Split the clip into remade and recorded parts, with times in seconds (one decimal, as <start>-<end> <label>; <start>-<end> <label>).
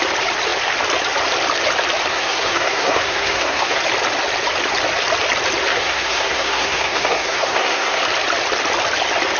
0.0-2.1 recorded; 2.1-3.8 remade; 3.8-5.7 recorded; 5.7-8.0 remade; 8.0-9.4 recorded